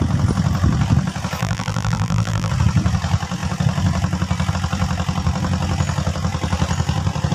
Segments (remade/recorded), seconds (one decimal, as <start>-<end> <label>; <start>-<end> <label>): 0.0-1.4 recorded; 1.4-2.5 remade; 2.5-7.3 recorded